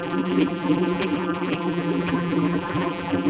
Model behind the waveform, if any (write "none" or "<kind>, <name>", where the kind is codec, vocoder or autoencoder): vocoder, BigVGAN v2